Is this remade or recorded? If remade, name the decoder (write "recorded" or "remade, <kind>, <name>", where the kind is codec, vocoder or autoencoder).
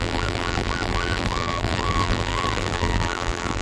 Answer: remade, vocoder, BigVGAN v2